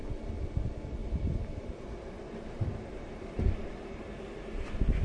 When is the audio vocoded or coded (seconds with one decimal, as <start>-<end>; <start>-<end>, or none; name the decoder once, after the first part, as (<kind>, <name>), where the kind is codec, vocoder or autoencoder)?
1.0-4.0 (vocoder, BigVGAN v2)